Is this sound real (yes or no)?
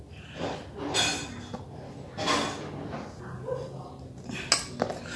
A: yes